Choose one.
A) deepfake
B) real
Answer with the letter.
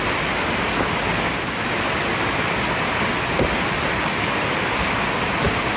B